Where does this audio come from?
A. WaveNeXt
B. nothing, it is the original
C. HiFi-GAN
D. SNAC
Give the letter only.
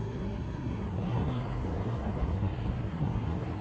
D